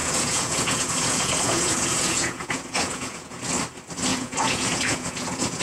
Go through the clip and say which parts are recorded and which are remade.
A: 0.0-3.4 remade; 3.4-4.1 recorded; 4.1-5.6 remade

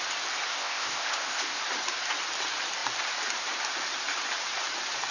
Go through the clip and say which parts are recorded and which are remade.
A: 0.0-0.5 recorded; 0.5-1.6 remade; 1.6-5.1 recorded